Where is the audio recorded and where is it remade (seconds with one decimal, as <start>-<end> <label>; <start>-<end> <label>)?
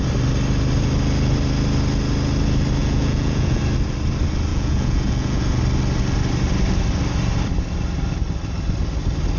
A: 0.0-2.8 recorded; 2.8-3.6 remade; 3.6-4.5 recorded; 4.5-5.6 remade; 5.6-9.4 recorded